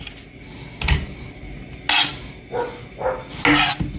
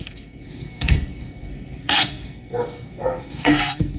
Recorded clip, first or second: first